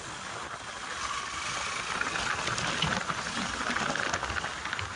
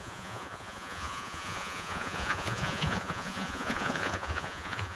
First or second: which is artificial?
second